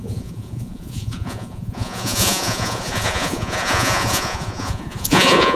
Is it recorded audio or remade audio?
remade